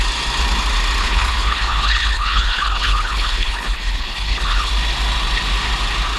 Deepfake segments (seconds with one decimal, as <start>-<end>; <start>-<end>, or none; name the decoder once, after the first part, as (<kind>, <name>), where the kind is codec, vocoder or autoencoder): 1.0-4.7 (codec, HILCodec)